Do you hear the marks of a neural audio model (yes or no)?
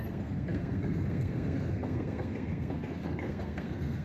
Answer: yes